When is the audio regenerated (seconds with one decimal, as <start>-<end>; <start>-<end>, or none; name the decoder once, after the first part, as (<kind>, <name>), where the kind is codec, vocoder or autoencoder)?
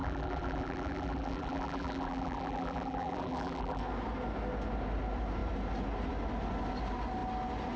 0.0-3.8 (vocoder, BigVGAN v2)